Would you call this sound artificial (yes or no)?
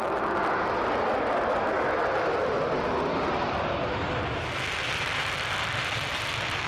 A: no